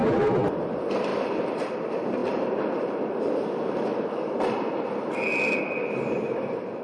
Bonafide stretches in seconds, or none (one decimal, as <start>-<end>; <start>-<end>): 0.0-1.1; 1.7-2.2; 3.2-3.9; 4.5-6.8